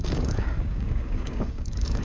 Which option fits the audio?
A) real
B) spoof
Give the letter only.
B